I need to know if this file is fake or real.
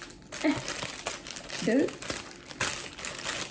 real